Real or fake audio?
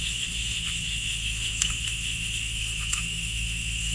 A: fake